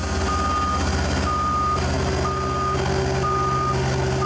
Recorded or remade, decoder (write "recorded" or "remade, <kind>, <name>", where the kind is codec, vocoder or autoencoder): recorded